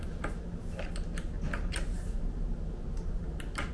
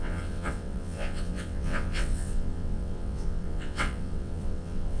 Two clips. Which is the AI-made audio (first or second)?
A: second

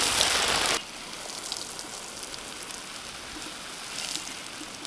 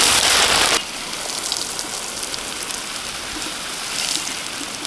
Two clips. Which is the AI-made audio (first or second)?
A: second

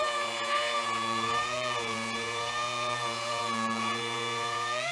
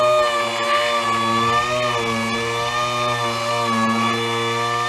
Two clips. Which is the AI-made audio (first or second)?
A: first